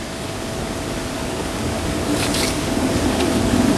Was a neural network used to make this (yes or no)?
yes